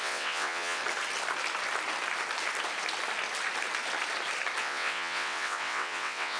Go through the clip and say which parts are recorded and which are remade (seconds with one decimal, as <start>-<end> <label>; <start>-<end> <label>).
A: 0.0-0.8 remade; 0.8-4.6 recorded; 4.6-6.4 remade